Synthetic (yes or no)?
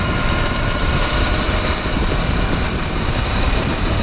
yes